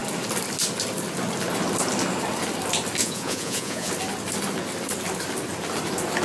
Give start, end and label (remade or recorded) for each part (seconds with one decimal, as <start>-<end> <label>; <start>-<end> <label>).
0.0-3.0 recorded; 3.0-3.9 remade; 3.9-6.2 recorded